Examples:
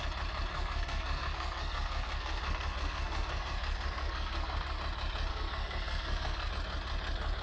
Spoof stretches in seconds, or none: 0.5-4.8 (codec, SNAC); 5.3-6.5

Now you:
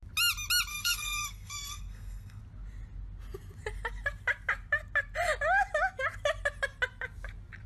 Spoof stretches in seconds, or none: 0.7-2.4 (codec, SNAC)

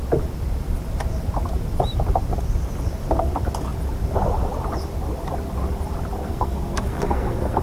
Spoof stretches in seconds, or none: 6.2-7.6 (codec, SNAC)